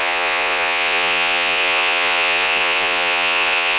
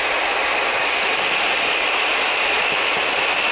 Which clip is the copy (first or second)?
first